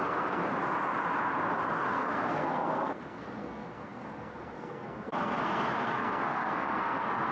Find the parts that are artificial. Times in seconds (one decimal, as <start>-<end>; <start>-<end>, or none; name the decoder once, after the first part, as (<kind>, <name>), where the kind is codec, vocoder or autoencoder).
0.0-0.4 (codec, SNAC); 1.9-7.3